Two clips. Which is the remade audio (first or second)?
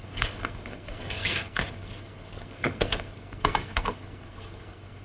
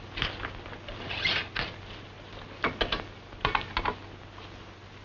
first